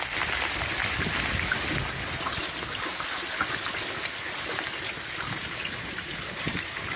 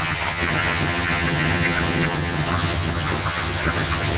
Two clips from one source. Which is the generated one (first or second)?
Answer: second